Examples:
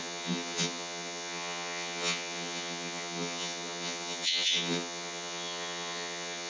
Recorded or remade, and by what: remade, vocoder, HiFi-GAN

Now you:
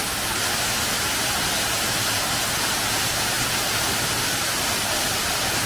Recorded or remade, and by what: recorded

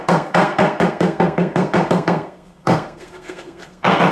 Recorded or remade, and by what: remade, codec, SNAC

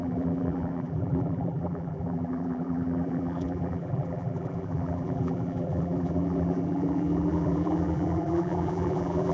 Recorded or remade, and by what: remade, vocoder, BigVGAN v2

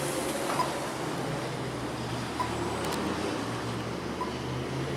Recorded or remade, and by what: recorded